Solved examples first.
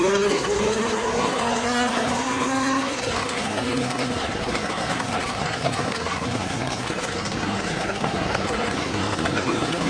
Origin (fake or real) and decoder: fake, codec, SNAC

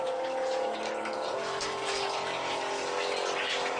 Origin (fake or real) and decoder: fake, codec, DAC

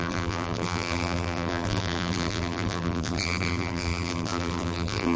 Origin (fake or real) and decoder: fake, vocoder, BigVGAN v2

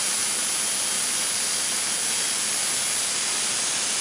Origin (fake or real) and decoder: real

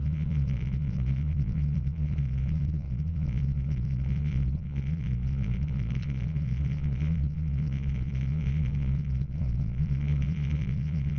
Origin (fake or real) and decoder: fake, vocoder, Vocos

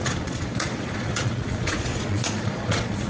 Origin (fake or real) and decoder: fake, vocoder, Vocos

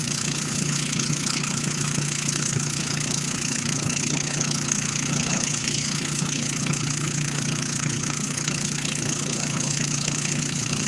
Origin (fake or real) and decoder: fake, codec, HILCodec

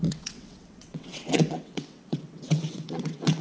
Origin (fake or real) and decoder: fake, vocoder, WaveNeXt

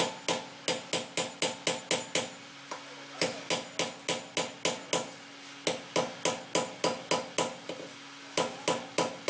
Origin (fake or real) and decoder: real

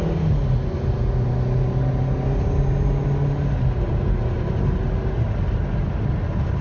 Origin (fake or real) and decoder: real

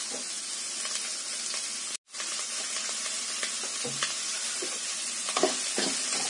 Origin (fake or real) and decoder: real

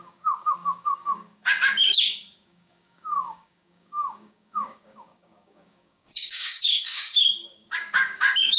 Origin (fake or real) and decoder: fake, codec, DAC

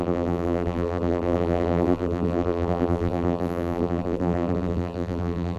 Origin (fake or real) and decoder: fake, vocoder, BigVGAN v2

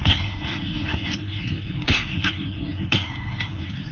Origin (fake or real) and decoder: fake, codec, SNAC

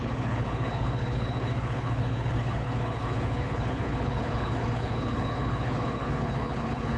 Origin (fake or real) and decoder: fake, codec, HILCodec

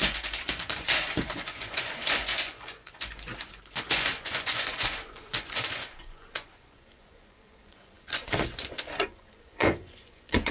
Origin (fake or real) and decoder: fake, vocoder, Vocos